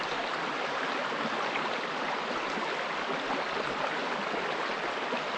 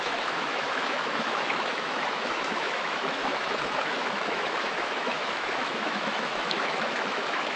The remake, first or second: second